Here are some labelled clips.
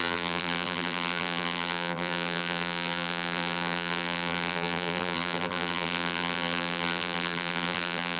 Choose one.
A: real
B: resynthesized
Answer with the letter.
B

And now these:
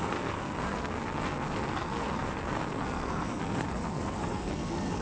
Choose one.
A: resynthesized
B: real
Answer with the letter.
A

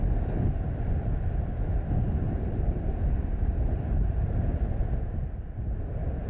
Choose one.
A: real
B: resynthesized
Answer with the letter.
A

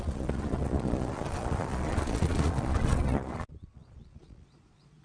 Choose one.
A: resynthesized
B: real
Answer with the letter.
A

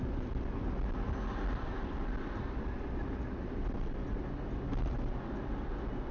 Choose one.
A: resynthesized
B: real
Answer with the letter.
B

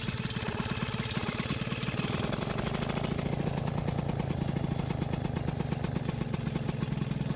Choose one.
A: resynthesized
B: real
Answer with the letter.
B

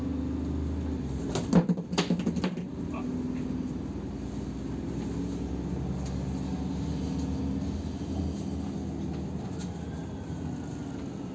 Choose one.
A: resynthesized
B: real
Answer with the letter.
B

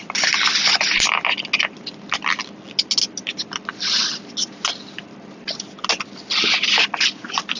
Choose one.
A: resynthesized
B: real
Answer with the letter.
B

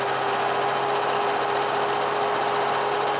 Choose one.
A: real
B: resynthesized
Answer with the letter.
A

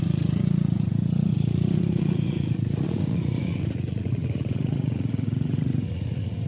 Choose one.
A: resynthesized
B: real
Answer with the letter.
A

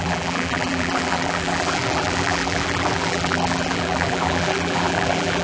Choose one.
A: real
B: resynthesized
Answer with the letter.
B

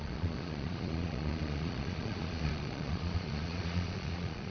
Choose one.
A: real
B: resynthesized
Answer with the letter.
B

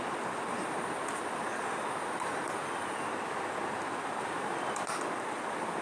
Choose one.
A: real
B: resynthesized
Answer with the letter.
A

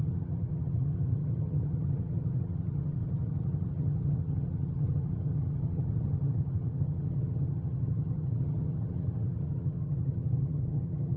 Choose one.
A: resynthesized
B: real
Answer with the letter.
A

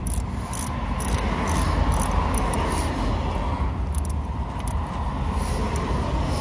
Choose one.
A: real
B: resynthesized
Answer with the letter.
A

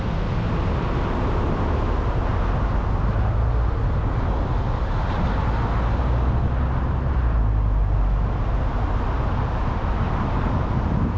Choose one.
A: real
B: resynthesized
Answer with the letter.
A